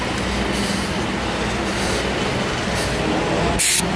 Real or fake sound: real